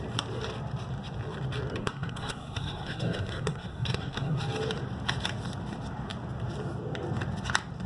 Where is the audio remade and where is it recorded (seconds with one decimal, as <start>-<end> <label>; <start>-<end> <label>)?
0.0-1.8 recorded; 1.8-4.4 remade; 4.4-7.9 recorded

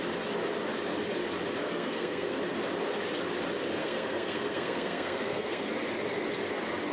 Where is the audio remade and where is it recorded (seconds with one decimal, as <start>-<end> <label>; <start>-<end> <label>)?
0.0-1.6 recorded; 1.6-2.4 remade; 2.4-3.8 recorded; 3.8-5.7 remade; 5.7-6.9 recorded

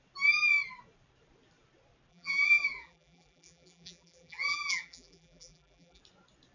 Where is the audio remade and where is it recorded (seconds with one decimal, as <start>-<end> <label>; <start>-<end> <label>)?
0.0-2.1 recorded; 2.1-6.0 remade; 6.0-6.5 recorded

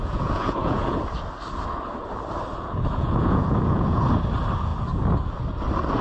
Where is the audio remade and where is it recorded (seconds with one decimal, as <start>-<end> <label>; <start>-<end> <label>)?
0.0-1.1 remade; 1.1-2.5 recorded; 2.5-4.0 remade; 4.0-6.0 recorded

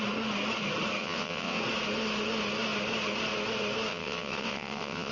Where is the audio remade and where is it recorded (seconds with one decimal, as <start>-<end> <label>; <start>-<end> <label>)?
0.0-1.0 recorded; 1.0-1.6 remade; 1.6-3.9 recorded; 3.9-5.1 remade

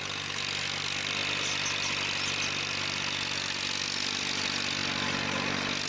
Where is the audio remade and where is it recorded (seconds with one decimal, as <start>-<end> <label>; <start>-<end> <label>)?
0.0-5.9 recorded

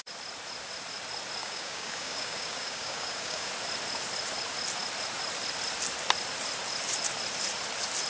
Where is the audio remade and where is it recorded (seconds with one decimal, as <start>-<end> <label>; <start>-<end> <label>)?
0.0-1.4 recorded; 1.4-3.5 remade; 3.5-8.1 recorded

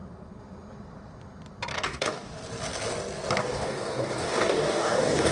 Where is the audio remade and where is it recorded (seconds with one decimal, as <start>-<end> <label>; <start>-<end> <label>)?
0.0-1.7 recorded; 1.7-2.3 remade; 2.3-3.4 recorded; 3.4-5.3 remade